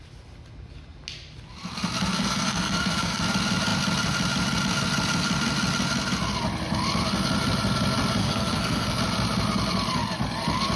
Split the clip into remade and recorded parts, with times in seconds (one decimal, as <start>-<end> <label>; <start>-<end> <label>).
0.0-2.1 recorded; 2.1-3.2 remade; 3.2-8.2 recorded; 8.2-9.0 remade; 9.0-10.8 recorded